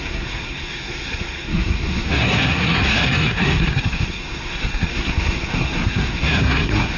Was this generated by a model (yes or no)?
yes